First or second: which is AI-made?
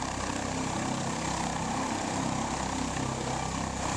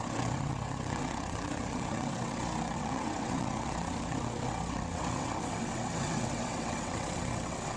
second